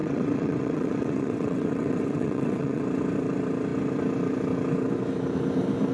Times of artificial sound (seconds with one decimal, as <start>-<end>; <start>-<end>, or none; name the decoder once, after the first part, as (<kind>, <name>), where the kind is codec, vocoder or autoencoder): 0.0-2.8 (vocoder, WaveNeXt)